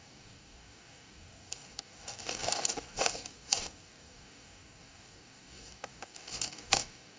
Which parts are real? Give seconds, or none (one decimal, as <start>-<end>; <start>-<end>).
none